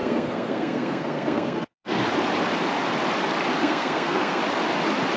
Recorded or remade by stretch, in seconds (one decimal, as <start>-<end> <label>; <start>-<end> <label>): 0.0-2.0 remade; 2.0-3.6 recorded; 3.6-4.4 remade; 4.4-5.2 recorded